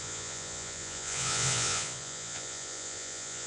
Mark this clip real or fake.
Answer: fake